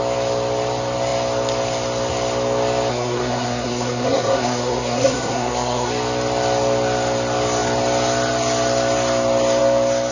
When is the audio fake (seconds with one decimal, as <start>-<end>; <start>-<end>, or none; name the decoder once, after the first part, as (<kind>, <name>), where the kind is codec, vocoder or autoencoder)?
2.9-5.9 (codec, SNAC)